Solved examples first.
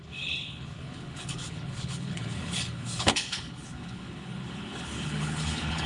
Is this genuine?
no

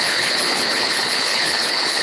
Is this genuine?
no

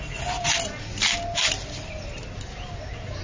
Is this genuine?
yes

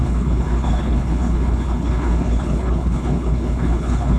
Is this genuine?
no